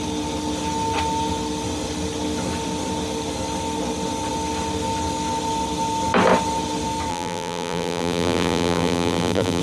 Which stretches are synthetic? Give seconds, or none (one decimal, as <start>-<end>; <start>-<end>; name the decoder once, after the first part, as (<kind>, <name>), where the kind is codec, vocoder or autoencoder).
7.1-9.6 (vocoder, BigVGAN v2)